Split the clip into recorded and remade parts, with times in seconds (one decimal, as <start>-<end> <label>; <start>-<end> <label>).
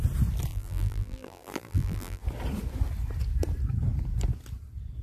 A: 0.0-0.5 recorded; 0.5-2.2 remade; 2.2-5.0 recorded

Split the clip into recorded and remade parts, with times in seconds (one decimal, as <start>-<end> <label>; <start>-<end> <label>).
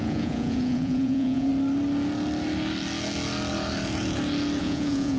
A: 0.0-1.5 remade; 1.5-4.6 recorded; 4.6-5.2 remade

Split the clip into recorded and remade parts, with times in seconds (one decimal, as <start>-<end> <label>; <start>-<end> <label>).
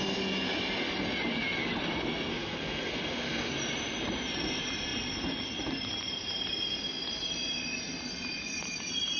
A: 0.0-2.3 recorded; 2.3-3.5 remade; 3.5-9.2 recorded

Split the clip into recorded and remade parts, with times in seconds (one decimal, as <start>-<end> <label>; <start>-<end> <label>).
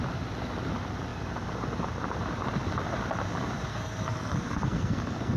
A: 0.0-3.7 recorded; 3.7-5.4 remade